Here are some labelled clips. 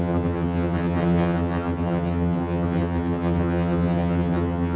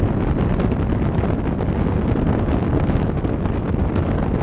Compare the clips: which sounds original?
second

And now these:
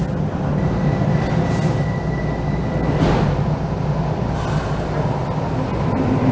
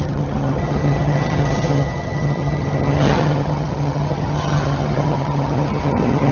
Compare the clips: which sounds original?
first